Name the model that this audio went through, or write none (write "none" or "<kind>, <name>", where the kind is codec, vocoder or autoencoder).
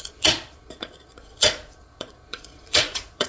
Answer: vocoder, Vocos